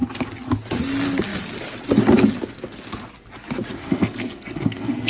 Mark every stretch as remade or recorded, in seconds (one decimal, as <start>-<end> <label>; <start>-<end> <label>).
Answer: 0.0-3.8 recorded; 3.8-5.1 remade